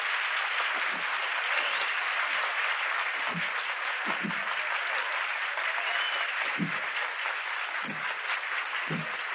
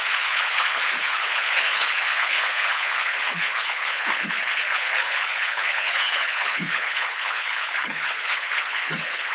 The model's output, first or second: second